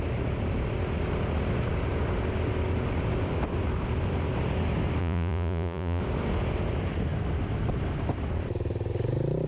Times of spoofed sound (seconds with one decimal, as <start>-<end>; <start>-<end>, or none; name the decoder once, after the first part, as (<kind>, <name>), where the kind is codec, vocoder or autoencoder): 5.0-6.0 (vocoder, Vocos)